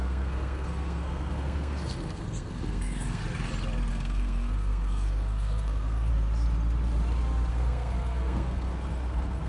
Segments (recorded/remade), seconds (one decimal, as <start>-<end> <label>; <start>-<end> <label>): 0.0-3.2 remade; 3.2-3.9 recorded; 3.9-6.1 remade; 6.1-7.5 recorded; 7.5-9.5 remade